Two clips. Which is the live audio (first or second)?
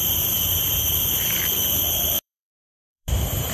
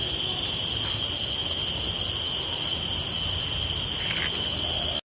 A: second